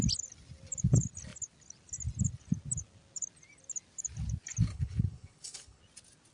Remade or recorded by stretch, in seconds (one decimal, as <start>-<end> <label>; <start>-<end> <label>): 0.0-4.7 recorded; 4.7-5.8 remade; 5.8-6.3 recorded